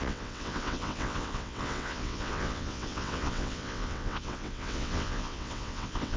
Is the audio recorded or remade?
remade